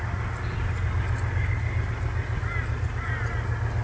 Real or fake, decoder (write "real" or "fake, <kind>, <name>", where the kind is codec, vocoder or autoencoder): real